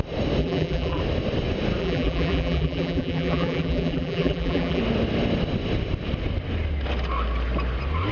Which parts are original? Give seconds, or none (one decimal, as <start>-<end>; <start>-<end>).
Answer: 0.0-0.4; 1.0-1.8; 4.8-8.1